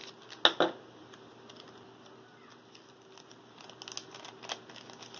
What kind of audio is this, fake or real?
real